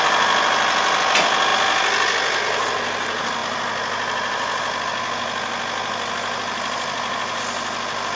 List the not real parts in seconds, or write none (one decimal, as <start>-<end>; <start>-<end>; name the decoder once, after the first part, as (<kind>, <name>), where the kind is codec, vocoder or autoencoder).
none